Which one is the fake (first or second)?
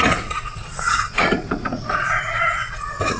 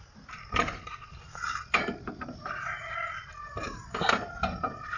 first